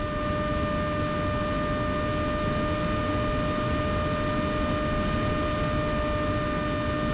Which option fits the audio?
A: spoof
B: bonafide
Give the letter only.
B